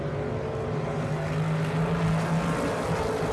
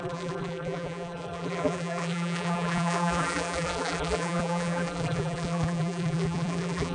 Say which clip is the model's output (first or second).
second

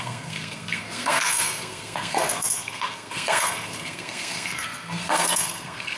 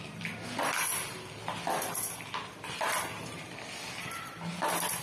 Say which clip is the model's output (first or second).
first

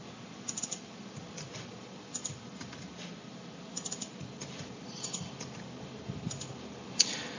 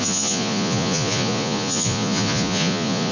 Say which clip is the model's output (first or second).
second